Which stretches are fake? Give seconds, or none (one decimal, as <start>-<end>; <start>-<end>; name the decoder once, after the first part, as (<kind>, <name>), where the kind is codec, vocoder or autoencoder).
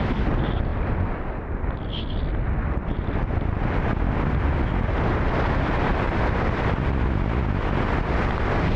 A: none